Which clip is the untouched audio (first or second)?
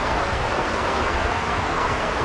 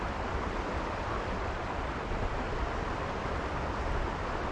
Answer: second